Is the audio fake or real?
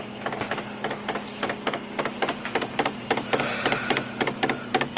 real